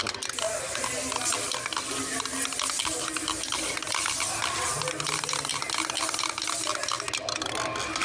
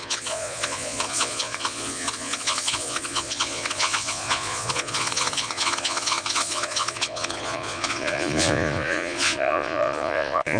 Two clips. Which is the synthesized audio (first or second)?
second